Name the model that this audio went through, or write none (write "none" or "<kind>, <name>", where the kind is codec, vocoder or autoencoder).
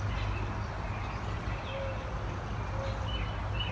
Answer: none